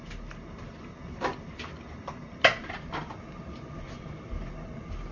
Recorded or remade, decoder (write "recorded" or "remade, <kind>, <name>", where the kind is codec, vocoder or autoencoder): recorded